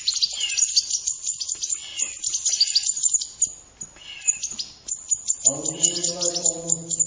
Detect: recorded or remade recorded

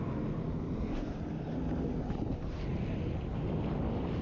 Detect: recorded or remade recorded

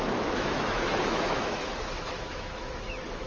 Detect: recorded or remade remade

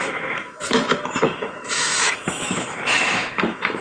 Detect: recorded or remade remade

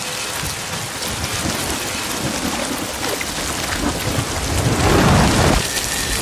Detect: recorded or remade recorded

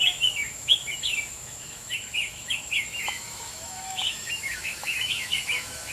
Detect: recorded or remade remade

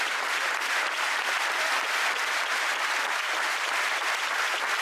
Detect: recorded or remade recorded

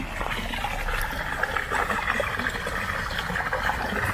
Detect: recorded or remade recorded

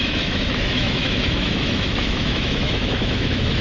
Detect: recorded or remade remade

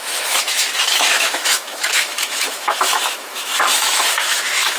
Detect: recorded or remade remade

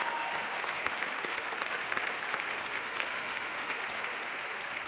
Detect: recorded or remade remade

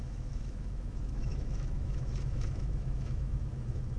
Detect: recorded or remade remade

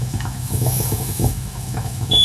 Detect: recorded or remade remade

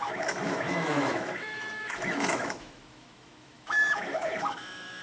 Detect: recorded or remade remade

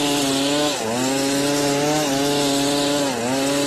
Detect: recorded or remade recorded